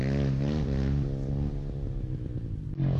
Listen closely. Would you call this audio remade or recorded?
recorded